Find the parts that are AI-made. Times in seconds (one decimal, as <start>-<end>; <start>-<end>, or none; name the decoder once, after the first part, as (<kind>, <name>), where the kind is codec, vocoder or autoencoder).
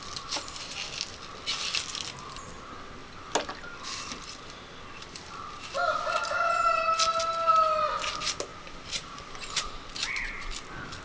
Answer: 8.5-10.1 (vocoder, BigVGAN v2)